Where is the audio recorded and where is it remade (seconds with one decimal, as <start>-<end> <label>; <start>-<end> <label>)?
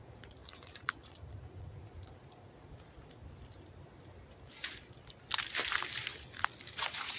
0.0-3.2 remade; 3.2-6.8 recorded; 6.8-7.2 remade